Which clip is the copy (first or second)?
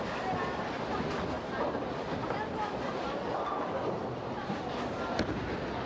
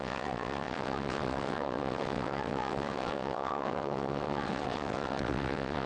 second